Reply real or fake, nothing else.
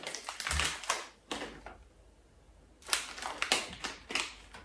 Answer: real